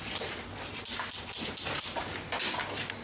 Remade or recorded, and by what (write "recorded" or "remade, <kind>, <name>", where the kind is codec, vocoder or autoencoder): recorded